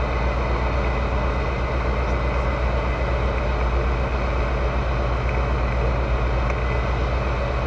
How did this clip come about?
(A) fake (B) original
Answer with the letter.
B